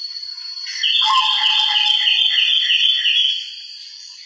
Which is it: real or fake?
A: real